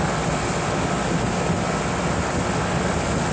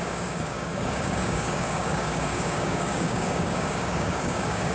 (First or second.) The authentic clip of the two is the first